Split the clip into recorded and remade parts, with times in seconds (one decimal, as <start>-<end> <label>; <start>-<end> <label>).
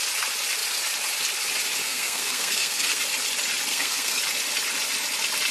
0.0-1.8 recorded; 1.8-3.0 remade; 3.0-3.7 recorded; 3.7-4.2 remade; 4.2-5.5 recorded